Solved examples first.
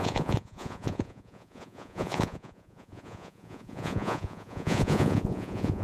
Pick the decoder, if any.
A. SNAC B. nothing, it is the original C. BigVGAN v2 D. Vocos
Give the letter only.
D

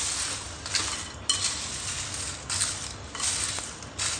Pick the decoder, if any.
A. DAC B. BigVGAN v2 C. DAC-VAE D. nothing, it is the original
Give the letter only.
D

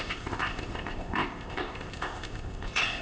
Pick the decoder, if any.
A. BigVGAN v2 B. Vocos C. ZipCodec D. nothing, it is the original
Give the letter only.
C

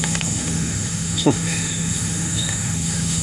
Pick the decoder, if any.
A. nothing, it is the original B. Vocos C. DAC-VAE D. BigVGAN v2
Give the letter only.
C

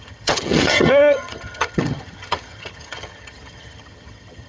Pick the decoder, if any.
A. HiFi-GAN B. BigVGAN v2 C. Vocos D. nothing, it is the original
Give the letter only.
A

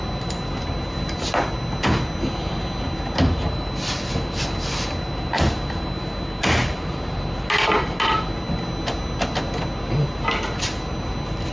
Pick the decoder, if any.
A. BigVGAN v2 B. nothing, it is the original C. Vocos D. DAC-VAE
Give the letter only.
B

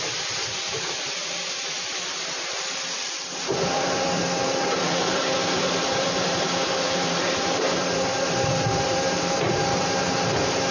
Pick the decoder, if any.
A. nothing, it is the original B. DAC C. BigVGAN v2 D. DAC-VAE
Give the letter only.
C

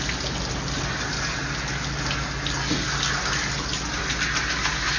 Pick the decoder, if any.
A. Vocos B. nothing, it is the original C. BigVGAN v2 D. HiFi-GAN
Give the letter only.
B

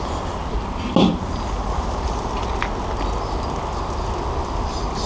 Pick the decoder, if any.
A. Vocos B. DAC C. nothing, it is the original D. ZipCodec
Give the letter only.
C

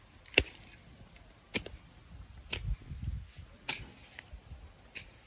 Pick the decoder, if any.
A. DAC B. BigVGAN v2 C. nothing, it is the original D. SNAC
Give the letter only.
C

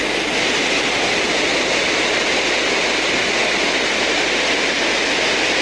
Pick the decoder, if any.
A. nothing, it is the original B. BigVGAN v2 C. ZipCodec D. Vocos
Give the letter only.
A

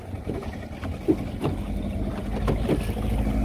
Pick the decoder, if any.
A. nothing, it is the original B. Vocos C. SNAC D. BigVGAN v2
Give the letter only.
A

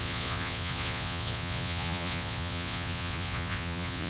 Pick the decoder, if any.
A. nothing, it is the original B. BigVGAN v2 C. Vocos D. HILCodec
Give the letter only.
C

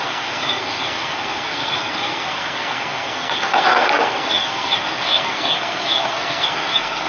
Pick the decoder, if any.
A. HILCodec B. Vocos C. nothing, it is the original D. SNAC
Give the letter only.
D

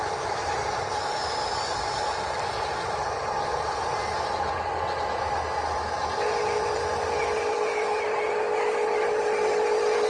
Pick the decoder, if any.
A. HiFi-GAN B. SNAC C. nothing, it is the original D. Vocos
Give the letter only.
C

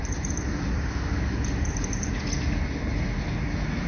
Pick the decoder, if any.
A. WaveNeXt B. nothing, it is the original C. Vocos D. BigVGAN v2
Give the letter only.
B